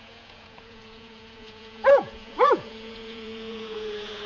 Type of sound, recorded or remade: remade